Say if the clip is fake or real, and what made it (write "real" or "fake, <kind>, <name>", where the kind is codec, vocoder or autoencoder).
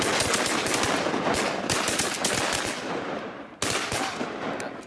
real